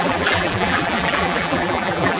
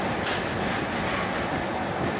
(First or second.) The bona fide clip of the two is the second